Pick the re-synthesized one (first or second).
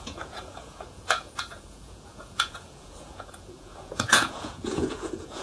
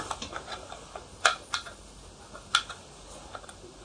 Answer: first